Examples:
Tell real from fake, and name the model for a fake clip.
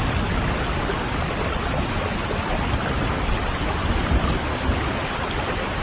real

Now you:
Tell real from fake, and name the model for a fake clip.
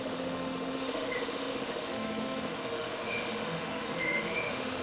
fake, autoencoder, DAC-VAE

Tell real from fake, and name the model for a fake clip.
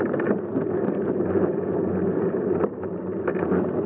real